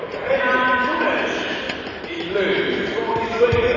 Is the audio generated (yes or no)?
yes